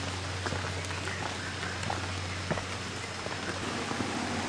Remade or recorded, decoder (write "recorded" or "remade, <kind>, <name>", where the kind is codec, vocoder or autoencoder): recorded